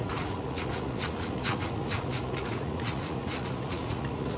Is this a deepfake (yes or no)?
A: yes